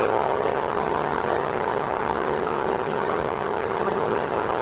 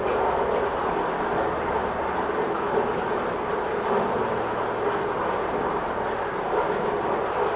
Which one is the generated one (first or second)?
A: first